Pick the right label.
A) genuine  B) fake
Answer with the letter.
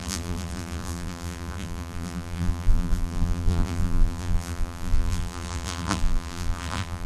B